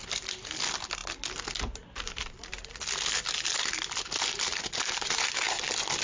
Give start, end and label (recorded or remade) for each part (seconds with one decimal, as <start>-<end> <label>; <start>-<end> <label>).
0.0-6.0 recorded